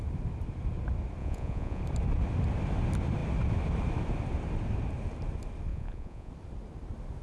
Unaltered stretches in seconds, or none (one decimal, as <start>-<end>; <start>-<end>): 0.0-1.2; 1.8-5.7; 6.3-7.2